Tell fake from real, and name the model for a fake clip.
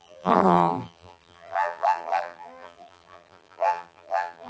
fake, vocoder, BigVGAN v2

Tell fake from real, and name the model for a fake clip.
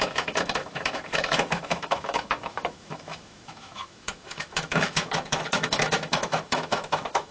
fake, autoencoder, DAC-VAE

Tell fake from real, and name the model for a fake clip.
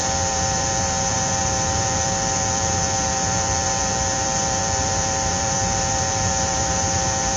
fake, vocoder, BigVGAN v2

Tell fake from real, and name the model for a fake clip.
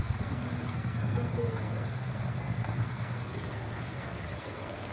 fake, codec, SNAC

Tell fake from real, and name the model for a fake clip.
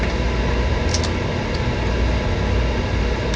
real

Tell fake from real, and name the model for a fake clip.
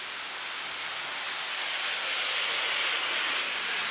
real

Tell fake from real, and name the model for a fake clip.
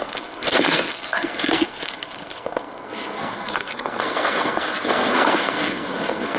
fake, codec, SNAC